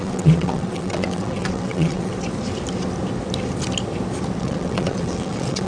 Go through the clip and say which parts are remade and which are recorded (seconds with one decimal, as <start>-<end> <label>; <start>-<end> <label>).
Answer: 0.0-2.1 remade; 2.1-4.4 recorded; 4.4-5.7 remade